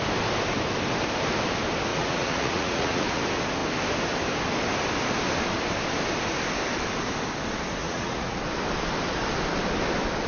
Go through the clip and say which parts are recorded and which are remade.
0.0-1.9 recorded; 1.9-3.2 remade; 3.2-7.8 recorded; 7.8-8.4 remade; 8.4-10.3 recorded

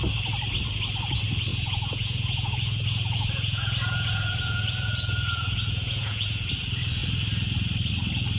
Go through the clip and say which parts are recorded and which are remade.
0.0-1.5 recorded; 1.5-6.5 remade; 6.5-8.4 recorded

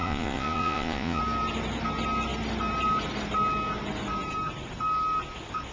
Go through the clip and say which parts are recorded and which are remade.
0.0-1.2 remade; 1.2-5.7 recorded

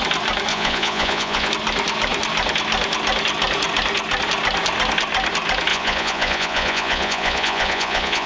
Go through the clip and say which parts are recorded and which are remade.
0.0-0.5 recorded; 0.5-1.5 remade; 1.5-5.7 recorded; 5.7-8.3 remade